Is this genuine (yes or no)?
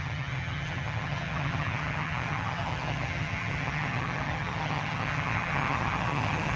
no